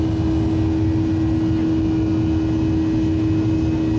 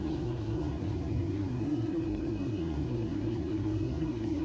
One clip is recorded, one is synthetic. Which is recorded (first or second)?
first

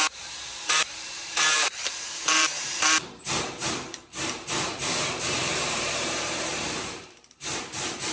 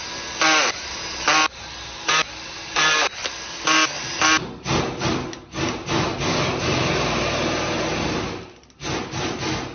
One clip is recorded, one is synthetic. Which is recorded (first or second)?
second